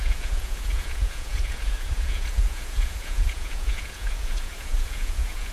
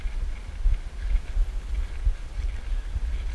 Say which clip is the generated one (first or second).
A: first